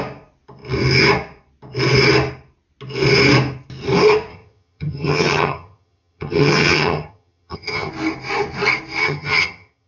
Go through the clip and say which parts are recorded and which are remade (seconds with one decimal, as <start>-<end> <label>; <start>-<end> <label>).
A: 0.0-4.3 recorded; 4.3-7.9 remade; 7.9-9.0 recorded; 9.0-9.9 remade